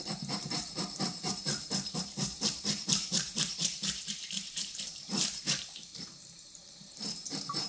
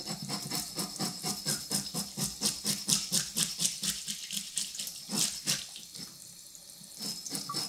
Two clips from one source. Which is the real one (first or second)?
second